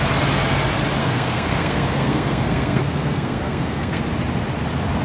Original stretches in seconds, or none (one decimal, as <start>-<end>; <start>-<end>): 0.0-1.0; 4.0-5.0